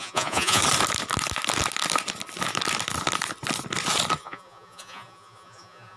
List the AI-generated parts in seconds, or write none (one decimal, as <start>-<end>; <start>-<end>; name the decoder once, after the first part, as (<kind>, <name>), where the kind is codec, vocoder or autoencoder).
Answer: 0.0-0.6 (vocoder, Vocos); 4.2-6.0